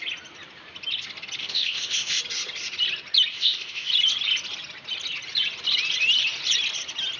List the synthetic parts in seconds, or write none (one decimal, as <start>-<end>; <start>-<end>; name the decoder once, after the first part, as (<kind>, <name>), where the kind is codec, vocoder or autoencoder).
1.4-2.2 (codec, ZipCodec); 3.3-3.9